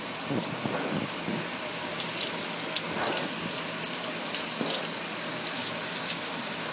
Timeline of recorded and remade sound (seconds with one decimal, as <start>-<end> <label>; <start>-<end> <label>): 0.0-5.6 recorded; 5.6-6.7 remade